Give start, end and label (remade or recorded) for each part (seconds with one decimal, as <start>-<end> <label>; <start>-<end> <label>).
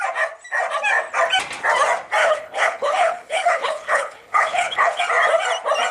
0.0-2.2 recorded; 2.2-5.0 remade; 5.0-5.9 recorded